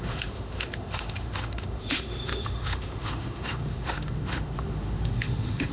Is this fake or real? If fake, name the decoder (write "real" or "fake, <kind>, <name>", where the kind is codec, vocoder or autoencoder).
fake, autoencoder, DAC-VAE